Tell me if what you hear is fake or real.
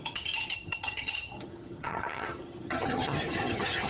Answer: fake